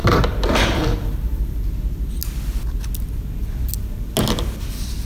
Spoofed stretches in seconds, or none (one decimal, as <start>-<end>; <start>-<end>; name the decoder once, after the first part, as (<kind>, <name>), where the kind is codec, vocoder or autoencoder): 0.0-1.7 (vocoder, BigVGAN v2)